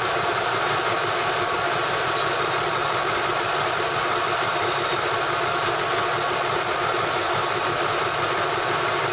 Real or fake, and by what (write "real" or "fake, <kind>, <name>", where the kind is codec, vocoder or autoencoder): fake, vocoder, BigVGAN v2